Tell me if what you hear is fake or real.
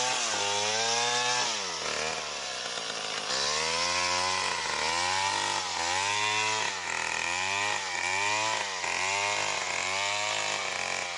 real